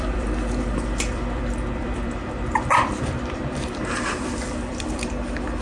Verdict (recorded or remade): remade